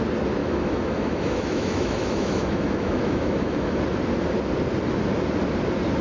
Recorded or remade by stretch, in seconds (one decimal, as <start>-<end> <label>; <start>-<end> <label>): 0.0-0.4 recorded; 0.4-3.8 remade; 3.8-6.0 recorded